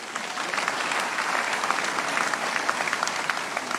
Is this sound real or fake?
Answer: real